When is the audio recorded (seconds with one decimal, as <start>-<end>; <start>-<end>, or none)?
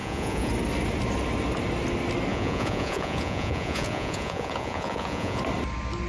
0.5-2.3; 5.4-6.1